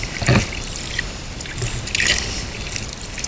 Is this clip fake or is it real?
real